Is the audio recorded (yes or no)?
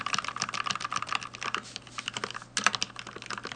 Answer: yes